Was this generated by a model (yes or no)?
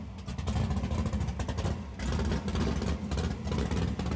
no